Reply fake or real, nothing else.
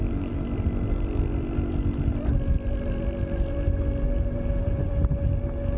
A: real